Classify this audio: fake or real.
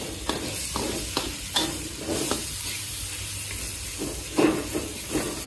real